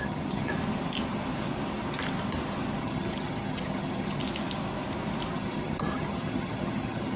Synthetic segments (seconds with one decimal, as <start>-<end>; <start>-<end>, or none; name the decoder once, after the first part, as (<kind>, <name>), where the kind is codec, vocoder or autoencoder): 0.0-0.5 (vocoder, HiFi-GAN); 2.8-4.2; 5.3-7.2